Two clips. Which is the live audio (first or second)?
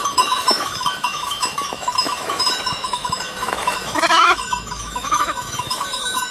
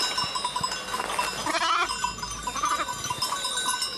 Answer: second